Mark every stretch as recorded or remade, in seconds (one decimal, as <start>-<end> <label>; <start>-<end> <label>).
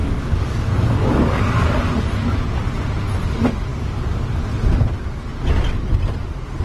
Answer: 0.0-1.4 remade; 1.4-3.7 recorded; 3.7-4.4 remade; 4.4-6.6 recorded